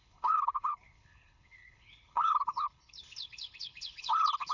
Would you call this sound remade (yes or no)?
yes